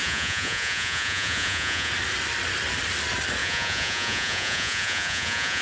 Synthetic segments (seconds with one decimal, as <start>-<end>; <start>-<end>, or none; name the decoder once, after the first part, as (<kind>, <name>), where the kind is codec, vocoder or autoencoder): 0.0-1.9 (vocoder, Vocos); 3.4-5.6